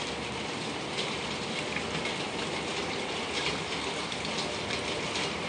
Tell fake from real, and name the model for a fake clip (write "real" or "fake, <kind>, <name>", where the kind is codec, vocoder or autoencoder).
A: fake, vocoder, BigVGAN v2